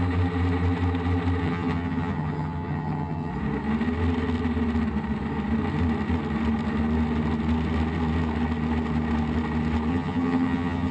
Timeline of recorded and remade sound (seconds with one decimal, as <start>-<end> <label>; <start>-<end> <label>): 0.0-1.4 recorded; 1.4-3.3 remade; 3.3-9.9 recorded; 9.9-10.9 remade